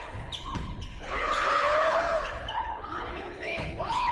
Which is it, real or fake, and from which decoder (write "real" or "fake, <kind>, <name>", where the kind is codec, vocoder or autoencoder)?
fake, codec, HILCodec